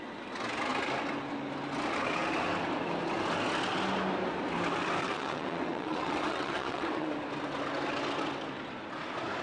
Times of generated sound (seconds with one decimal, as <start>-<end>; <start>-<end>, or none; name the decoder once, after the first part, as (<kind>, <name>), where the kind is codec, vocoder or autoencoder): 5.0-7.1 (vocoder, WaveNeXt)